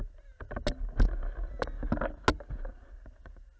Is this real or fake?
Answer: real